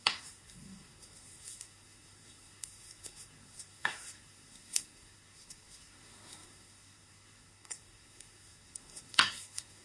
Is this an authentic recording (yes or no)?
no